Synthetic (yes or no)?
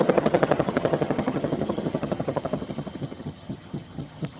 yes